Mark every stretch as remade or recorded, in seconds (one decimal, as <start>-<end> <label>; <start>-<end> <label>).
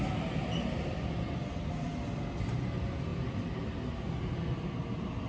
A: 0.0-5.3 recorded